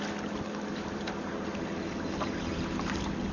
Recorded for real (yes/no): yes